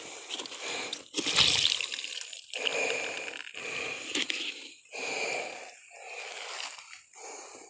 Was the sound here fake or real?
real